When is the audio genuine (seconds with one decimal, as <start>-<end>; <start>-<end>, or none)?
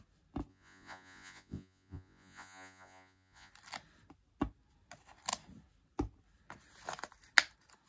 0.0-0.5; 3.5-7.9